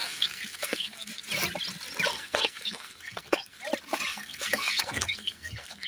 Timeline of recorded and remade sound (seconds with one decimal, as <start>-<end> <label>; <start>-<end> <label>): 0.0-1.1 remade; 1.1-2.1 recorded; 2.1-3.6 remade; 3.6-4.1 recorded; 4.1-5.9 remade